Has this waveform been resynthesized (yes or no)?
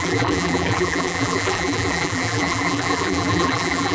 yes